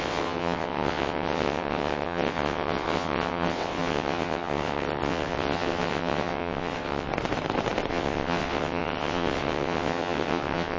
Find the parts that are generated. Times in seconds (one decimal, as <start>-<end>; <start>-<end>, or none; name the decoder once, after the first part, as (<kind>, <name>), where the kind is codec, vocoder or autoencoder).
0.0-7.1 (vocoder, WaveNeXt); 7.9-10.8